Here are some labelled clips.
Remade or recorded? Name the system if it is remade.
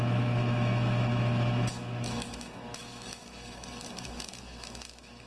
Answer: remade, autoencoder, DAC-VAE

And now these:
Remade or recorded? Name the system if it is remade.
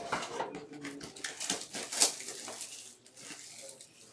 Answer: recorded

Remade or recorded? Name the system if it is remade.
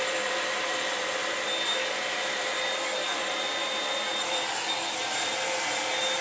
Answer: remade, vocoder, BigVGAN v2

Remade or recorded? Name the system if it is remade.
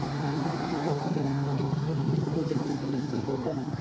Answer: remade, codec, SNAC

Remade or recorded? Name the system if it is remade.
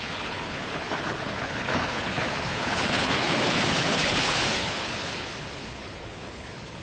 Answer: remade, codec, HILCodec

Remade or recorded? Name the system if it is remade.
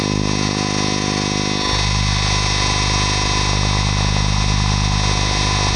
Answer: recorded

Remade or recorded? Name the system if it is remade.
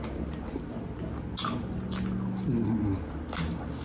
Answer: recorded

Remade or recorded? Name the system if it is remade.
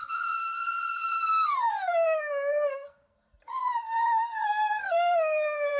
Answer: remade, codec, SNAC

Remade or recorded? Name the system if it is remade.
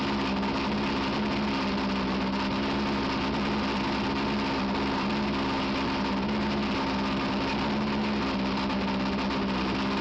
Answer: recorded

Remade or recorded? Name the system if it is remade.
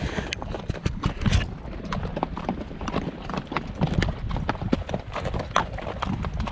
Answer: recorded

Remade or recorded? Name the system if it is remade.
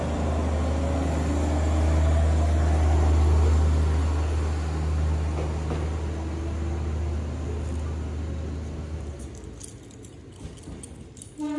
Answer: recorded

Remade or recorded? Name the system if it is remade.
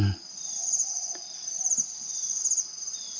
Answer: recorded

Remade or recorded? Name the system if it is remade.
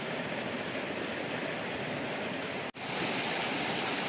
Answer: recorded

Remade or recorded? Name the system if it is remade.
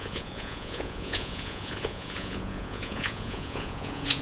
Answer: remade, vocoder, Vocos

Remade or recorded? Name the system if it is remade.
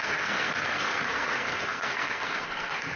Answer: remade, codec, SNAC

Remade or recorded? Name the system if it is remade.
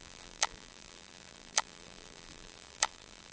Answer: remade, vocoder, BigVGAN v2